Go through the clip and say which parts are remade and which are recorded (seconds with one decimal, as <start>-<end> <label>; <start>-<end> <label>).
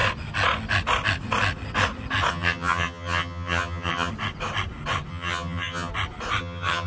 0.0-2.3 recorded; 2.3-4.1 remade; 4.1-5.1 recorded; 5.1-5.9 remade; 5.9-6.4 recorded; 6.4-6.9 remade